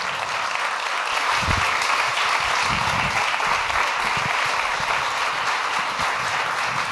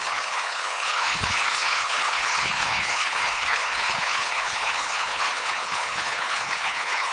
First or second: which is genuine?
first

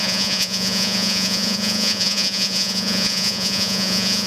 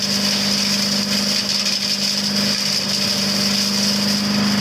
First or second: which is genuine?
second